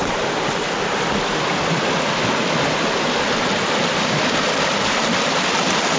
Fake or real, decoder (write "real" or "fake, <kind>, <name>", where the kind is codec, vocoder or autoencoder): real